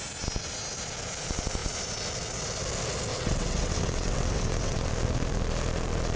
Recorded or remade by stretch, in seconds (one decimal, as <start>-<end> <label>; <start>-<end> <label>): 0.0-3.1 recorded; 3.1-4.9 remade; 4.9-6.2 recorded